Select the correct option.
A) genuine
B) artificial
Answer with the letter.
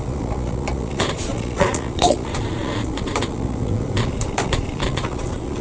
B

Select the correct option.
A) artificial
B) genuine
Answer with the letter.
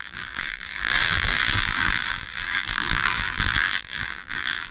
A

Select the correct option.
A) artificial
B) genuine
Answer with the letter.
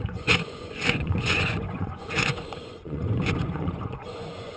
A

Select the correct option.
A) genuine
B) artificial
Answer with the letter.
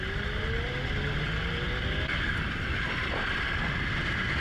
A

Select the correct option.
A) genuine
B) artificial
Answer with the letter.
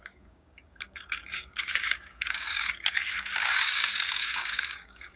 B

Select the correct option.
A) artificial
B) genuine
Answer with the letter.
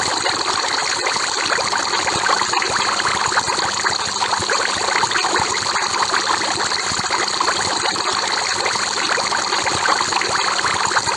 B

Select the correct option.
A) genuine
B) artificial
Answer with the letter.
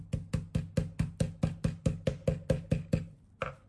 A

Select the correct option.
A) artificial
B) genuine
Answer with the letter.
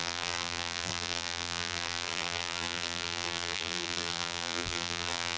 A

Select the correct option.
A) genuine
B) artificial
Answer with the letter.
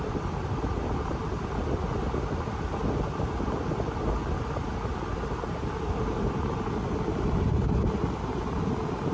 A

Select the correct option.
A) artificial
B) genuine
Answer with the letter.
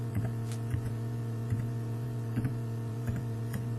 A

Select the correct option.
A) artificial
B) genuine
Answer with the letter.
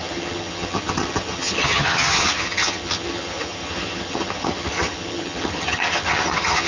A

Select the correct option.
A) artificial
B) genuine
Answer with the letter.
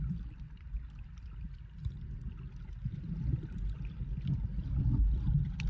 B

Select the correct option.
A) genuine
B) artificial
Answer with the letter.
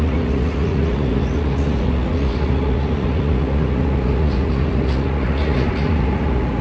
B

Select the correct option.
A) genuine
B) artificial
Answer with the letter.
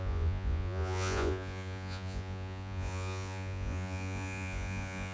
B